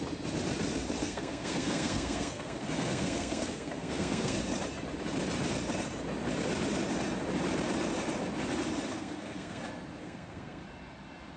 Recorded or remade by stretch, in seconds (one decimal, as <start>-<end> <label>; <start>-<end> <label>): 0.0-1.0 recorded; 1.0-4.4 remade; 4.4-8.9 recorded; 8.9-9.6 remade; 9.6-10.0 recorded; 10.0-10.6 remade; 10.6-11.4 recorded